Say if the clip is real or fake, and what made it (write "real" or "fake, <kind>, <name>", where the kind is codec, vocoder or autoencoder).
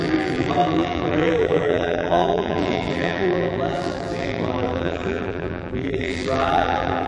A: fake, vocoder, BigVGAN v2